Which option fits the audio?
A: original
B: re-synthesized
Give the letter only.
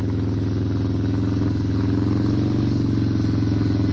A